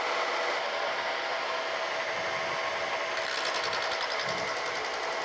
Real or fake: real